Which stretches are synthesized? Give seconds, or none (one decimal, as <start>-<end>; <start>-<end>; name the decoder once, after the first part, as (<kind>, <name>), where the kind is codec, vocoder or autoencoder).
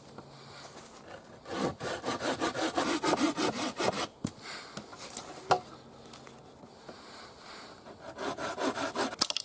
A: 1.7-2.5 (vocoder, BigVGAN v2)